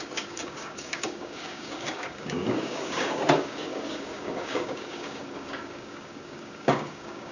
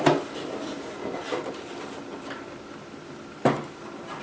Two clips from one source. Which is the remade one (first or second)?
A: first